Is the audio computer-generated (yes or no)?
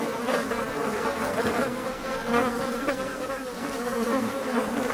yes